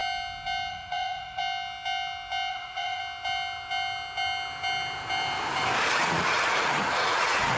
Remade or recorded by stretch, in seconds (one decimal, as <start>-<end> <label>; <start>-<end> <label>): 0.0-0.7 recorded; 0.7-1.4 remade; 1.4-2.5 recorded; 2.5-3.0 remade; 3.0-5.9 recorded; 5.9-7.6 remade